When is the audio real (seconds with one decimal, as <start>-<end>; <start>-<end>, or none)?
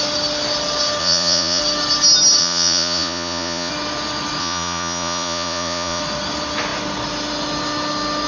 0.0-1.0; 1.6-2.4; 3.7-4.4; 6.0-8.3